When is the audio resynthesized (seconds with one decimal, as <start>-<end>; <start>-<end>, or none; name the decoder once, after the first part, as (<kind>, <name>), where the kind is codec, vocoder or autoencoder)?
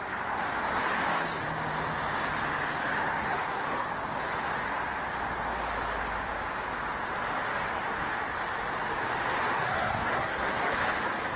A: 3.2-3.9 (codec, SNAC); 9.5-10.7